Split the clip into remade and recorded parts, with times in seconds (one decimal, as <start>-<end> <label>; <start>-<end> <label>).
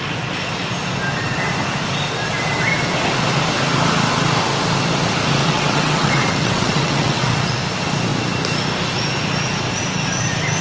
0.0-5.4 recorded; 5.4-7.6 remade; 7.6-10.6 recorded